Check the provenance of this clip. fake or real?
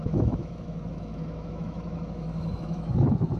fake